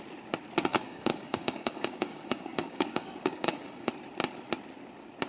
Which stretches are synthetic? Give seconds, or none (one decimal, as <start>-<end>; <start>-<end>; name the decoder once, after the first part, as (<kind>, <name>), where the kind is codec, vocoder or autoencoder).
0.7-3.9 (codec, DAC)